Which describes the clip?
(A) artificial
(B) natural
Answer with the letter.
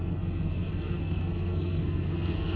A